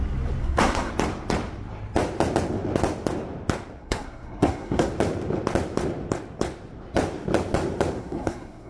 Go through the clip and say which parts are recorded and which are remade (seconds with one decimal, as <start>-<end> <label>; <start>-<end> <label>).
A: 0.0-0.4 recorded; 0.4-0.9 remade; 0.9-3.8 recorded; 3.8-4.9 remade; 4.9-8.0 recorded; 8.0-8.7 remade